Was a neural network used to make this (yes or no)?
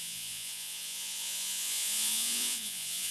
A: yes